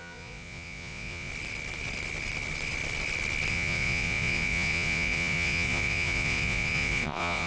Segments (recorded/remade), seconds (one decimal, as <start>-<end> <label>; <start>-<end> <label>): 0.0-1.3 remade; 1.3-3.5 recorded; 3.5-7.5 remade